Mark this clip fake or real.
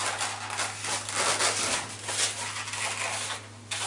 real